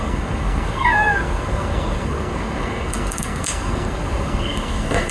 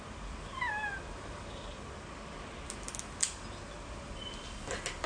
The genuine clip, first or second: second